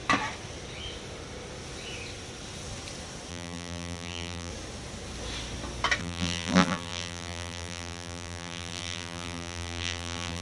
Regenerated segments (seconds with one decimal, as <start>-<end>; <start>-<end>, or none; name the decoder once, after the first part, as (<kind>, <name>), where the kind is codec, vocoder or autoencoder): 3.3-4.5 (vocoder, BigVGAN v2); 6.0-10.4